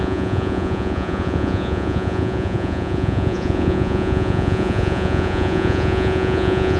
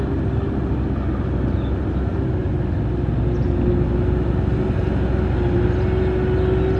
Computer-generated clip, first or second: first